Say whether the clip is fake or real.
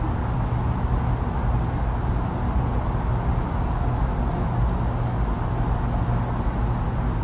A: real